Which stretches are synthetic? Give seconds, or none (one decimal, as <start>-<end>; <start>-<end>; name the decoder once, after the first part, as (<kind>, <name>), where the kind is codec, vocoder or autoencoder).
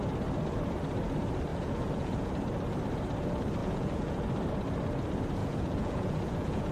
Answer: 1.5-2.3 (vocoder, Vocos); 3.6-4.2; 5.4-6.7